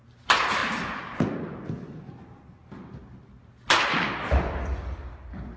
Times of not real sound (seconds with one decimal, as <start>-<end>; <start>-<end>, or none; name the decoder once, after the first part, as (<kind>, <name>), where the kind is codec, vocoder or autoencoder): 0.0-0.6 (vocoder, BigVGAN v2); 2.2-3.0